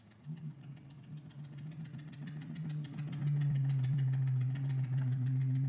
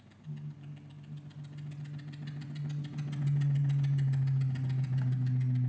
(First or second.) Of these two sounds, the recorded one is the second